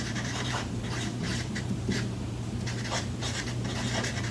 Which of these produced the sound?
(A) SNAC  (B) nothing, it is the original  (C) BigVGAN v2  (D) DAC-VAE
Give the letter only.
C